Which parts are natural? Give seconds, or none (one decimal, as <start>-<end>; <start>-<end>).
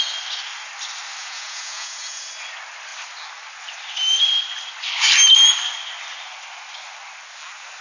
0.0-1.2; 2.3-7.8